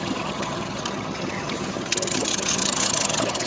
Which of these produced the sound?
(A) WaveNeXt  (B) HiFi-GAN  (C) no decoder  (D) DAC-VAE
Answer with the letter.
B